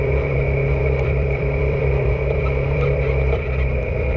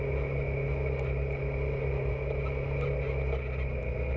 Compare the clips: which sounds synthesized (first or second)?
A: first